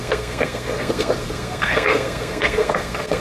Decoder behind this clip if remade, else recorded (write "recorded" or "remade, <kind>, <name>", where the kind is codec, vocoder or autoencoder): remade, codec, SNAC